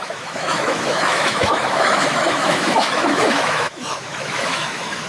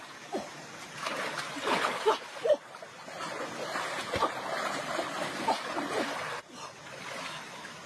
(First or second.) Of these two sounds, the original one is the second